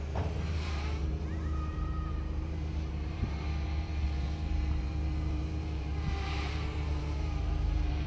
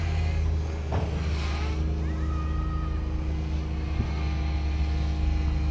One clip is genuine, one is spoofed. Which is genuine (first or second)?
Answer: second